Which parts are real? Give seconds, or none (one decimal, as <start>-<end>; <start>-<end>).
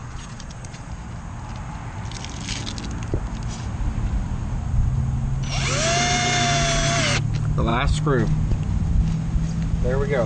0.9-10.3